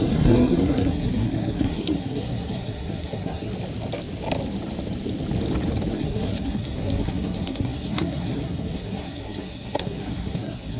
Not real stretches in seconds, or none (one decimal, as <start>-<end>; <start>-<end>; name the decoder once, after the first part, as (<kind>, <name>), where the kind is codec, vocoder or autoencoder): 0.0-3.5 (codec, SNAC); 5.9-10.8